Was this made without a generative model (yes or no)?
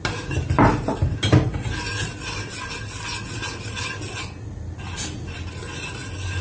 yes